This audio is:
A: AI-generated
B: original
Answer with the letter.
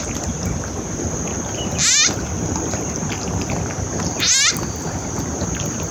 B